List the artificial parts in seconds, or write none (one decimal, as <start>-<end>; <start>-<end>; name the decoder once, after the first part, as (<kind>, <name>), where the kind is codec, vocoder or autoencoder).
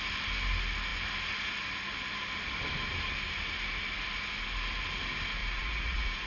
5.4-6.3 (vocoder, Vocos)